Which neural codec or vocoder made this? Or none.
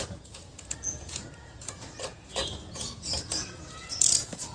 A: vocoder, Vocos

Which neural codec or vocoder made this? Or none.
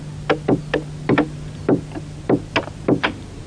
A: none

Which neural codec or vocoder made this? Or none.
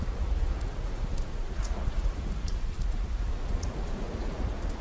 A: vocoder, Vocos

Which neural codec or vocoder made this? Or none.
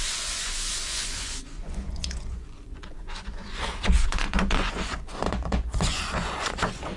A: vocoder, Vocos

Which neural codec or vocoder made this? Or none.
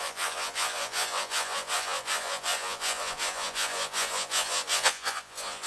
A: vocoder, Vocos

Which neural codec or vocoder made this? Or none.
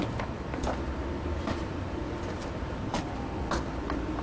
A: none